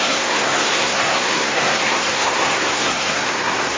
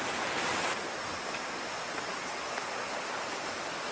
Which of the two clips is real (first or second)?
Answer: second